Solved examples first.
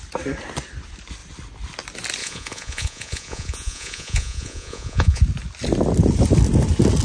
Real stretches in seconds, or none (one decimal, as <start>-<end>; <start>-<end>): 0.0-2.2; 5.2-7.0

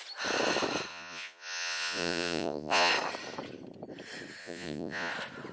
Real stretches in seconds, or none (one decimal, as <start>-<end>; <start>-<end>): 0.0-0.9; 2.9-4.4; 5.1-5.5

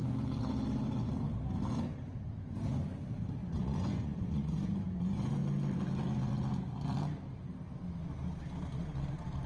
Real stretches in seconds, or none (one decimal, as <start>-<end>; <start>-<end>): 0.0-3.4; 4.6-9.5

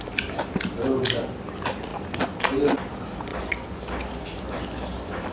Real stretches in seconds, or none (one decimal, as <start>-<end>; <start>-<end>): 0.0-3.3; 3.8-5.3

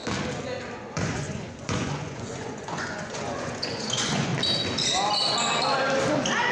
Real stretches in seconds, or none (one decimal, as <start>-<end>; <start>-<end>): 0.0-0.8; 4.3-6.5